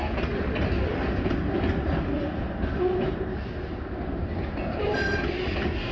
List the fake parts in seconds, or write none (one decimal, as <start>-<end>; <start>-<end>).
none